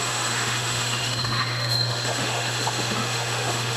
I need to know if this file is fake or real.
fake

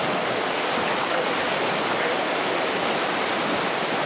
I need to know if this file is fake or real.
real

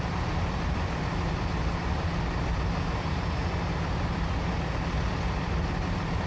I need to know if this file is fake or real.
real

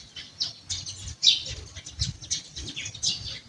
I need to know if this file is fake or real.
real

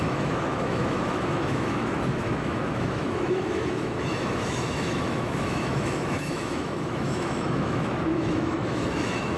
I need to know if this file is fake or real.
fake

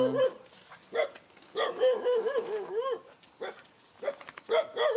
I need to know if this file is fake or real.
real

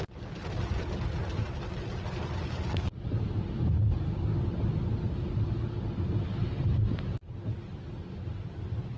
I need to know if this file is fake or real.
real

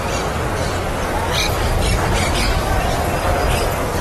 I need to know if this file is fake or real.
real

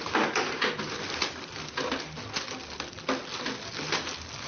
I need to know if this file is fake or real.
real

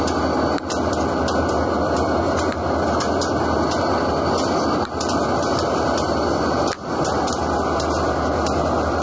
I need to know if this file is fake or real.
real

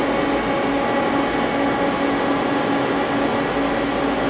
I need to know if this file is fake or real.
real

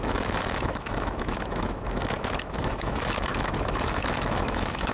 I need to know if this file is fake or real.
fake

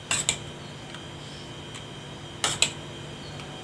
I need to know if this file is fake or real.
real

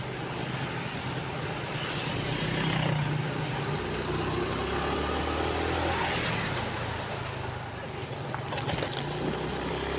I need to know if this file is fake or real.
real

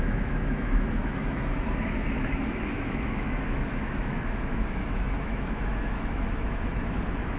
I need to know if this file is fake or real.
fake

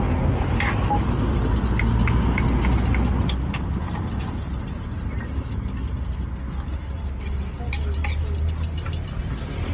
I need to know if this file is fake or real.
real